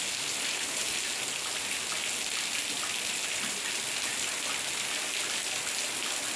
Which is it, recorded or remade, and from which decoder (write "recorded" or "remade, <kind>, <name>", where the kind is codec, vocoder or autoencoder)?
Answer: recorded